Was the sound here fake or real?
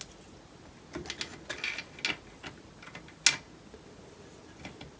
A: real